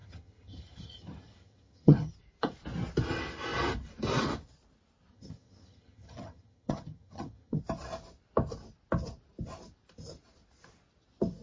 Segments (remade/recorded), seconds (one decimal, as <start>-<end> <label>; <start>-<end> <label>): 0.0-2.1 remade; 2.1-5.1 recorded; 5.1-7.6 remade; 7.6-11.4 recorded